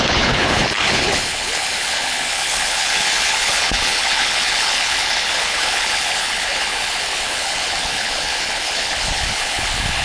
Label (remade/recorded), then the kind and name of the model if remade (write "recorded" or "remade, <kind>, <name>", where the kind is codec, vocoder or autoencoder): remade, codec, HILCodec